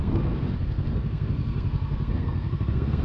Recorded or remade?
remade